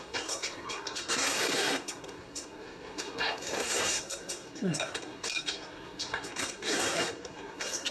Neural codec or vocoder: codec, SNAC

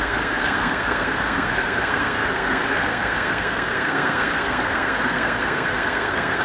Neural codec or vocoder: codec, SNAC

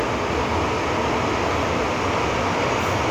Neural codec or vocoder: none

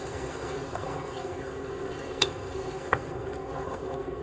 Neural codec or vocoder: codec, SNAC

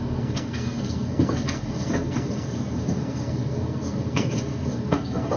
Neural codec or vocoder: codec, SNAC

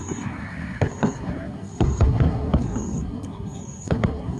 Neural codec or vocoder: codec, SNAC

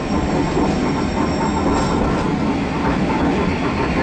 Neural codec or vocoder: none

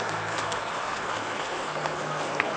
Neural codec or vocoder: codec, SNAC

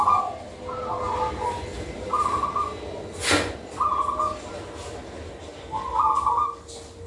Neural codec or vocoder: none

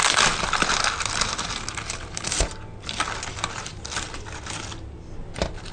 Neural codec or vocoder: none